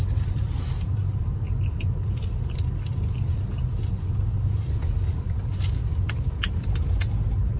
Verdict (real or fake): real